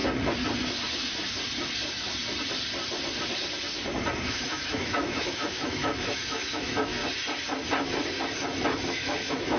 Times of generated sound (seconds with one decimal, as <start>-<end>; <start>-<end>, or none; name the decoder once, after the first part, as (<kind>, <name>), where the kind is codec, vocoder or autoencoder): 4.3-7.0 (autoencoder, DAC-VAE); 8.9-9.6